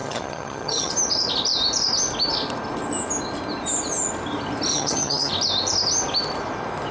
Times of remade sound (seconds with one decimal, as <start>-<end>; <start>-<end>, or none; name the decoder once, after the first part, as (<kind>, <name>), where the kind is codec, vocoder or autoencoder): 0.0-0.9 (vocoder, HiFi-GAN); 4.7-5.3